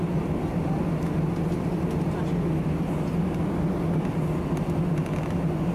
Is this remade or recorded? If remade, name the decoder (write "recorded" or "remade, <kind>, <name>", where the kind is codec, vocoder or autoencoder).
recorded